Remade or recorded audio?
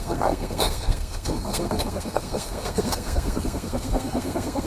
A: remade